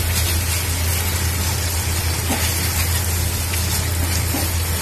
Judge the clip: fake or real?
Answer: real